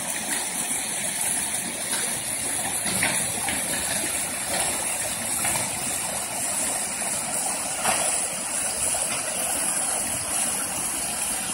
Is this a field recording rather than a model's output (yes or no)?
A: yes